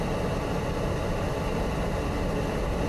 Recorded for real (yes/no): yes